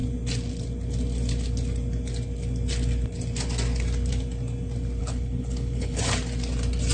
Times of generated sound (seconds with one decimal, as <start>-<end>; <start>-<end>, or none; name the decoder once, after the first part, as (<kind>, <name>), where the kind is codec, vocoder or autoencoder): 5.0-6.0 (codec, HILCodec)